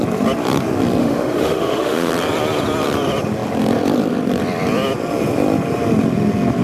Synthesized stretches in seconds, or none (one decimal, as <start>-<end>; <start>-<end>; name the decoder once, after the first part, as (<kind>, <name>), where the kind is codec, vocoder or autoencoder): 1.0-2.1 (autoencoder, DAC-VAE)